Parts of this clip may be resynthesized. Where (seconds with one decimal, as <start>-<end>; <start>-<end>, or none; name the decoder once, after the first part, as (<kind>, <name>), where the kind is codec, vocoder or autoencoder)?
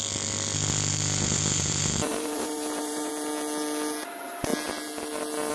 0.9-3.1 (vocoder, BigVGAN v2)